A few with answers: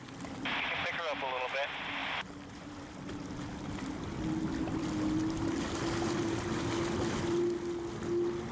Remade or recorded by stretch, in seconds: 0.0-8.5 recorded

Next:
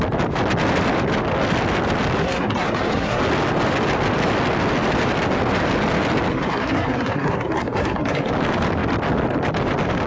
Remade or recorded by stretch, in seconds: 0.0-2.2 recorded; 2.2-3.2 remade; 3.2-6.3 recorded; 6.3-8.3 remade; 8.3-10.1 recorded

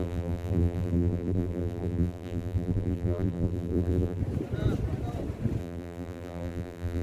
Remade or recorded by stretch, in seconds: 0.0-4.2 remade; 4.2-5.6 recorded; 5.6-7.0 remade

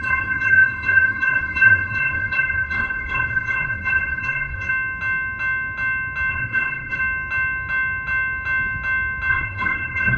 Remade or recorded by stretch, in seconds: 0.0-4.7 remade; 4.7-6.3 recorded; 6.3-7.0 remade; 7.0-9.3 recorded; 9.3-10.2 remade

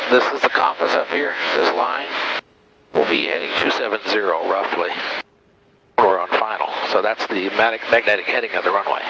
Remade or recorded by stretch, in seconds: 0.0-0.6 recorded; 0.6-2.1 remade; 2.1-2.9 recorded; 2.9-3.7 remade; 3.7-9.1 recorded

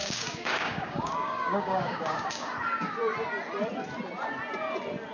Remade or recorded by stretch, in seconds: 0.0-2.5 remade; 2.5-5.1 recorded

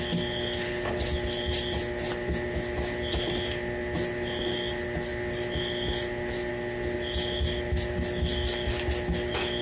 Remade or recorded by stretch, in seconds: 0.0-9.6 recorded

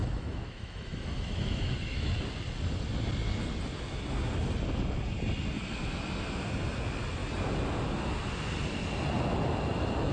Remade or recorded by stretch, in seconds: 0.0-2.1 remade; 2.1-10.1 recorded